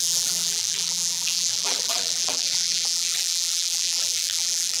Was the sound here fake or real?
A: fake